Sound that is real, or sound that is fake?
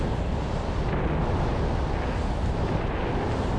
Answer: real